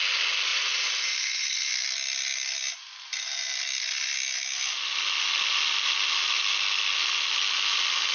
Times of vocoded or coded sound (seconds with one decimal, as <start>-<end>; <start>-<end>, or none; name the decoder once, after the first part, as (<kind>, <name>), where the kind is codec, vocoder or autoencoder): 0.5-1.7 (vocoder, BigVGAN v2)